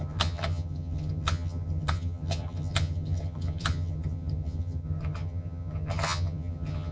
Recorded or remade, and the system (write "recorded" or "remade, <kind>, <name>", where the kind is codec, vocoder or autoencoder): remade, vocoder, HiFi-GAN